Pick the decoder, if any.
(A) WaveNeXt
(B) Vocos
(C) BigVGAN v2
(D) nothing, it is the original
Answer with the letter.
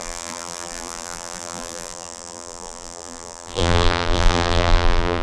C